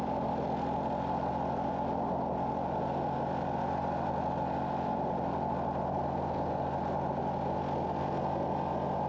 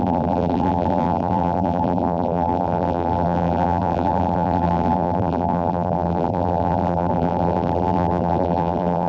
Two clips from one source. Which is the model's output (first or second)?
second